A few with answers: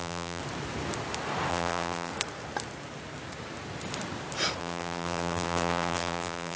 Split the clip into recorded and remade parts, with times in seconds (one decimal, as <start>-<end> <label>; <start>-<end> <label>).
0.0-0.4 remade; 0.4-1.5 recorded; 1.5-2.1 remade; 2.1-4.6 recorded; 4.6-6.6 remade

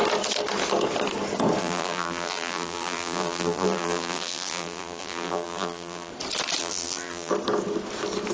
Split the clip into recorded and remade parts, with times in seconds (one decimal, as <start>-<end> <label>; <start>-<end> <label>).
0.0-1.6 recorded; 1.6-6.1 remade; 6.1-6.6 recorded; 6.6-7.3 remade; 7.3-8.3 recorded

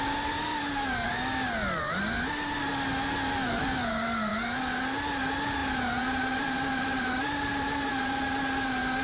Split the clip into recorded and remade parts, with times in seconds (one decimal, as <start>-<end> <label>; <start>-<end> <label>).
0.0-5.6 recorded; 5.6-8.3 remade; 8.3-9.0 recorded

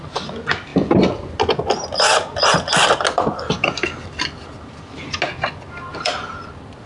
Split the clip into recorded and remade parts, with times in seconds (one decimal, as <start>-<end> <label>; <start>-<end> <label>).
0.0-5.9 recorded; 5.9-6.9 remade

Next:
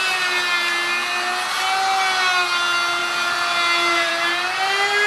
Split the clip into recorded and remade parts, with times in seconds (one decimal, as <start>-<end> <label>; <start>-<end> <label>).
0.0-3.0 recorded; 3.0-4.1 remade; 4.1-5.1 recorded